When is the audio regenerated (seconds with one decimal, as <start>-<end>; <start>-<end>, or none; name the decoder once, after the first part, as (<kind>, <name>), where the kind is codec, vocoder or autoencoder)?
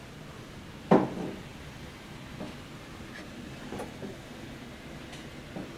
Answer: none